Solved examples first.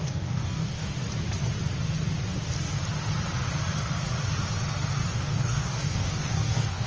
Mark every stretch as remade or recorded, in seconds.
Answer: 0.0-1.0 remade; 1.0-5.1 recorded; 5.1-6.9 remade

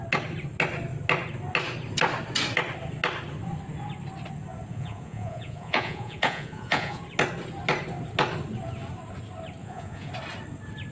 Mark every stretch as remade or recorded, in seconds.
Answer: 0.0-4.7 recorded; 4.7-7.0 remade; 7.0-9.6 recorded; 9.6-10.1 remade; 10.1-10.9 recorded

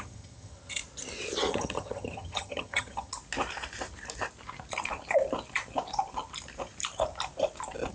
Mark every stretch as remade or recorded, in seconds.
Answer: 0.0-0.8 remade; 0.8-1.5 recorded; 1.5-3.1 remade; 3.1-7.9 recorded

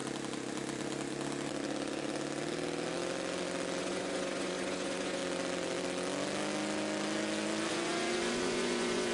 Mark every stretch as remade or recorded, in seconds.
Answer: 0.0-3.8 recorded; 3.8-5.2 remade; 5.2-7.7 recorded; 7.7-9.1 remade

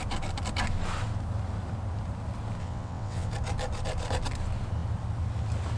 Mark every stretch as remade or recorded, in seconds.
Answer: 0.0-2.6 recorded; 2.6-3.3 remade; 3.3-5.8 recorded